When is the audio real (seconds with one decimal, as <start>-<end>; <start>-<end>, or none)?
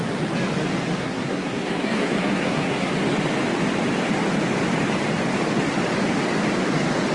0.0-1.0; 2.9-7.1